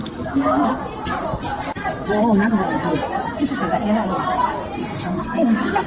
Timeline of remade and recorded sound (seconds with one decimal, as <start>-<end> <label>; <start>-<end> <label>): 0.0-4.8 recorded; 4.8-5.9 remade